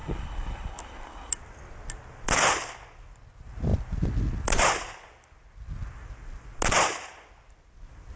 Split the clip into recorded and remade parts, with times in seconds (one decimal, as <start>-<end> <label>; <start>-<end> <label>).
0.0-1.3 remade; 1.3-8.2 recorded